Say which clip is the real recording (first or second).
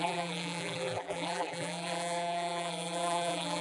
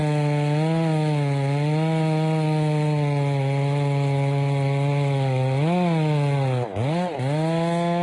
second